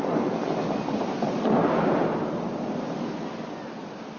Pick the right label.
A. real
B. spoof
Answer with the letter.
A